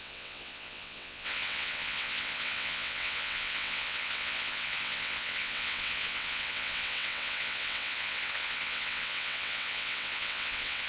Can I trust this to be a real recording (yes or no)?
no